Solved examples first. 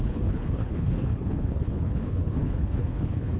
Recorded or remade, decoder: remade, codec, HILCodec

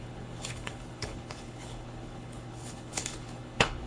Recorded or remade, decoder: remade, codec, HILCodec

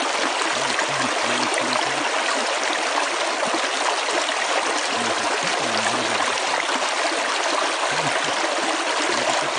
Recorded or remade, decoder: recorded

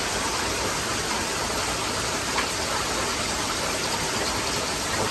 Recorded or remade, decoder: recorded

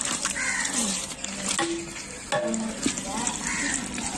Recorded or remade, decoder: recorded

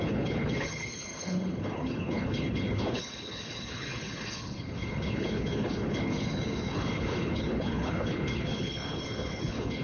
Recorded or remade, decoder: remade, codec, HILCodec